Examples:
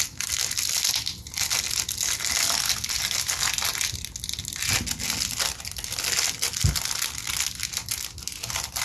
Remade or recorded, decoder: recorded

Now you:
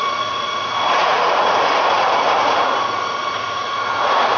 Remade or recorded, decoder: remade, vocoder, Vocos